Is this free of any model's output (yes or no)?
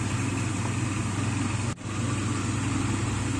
yes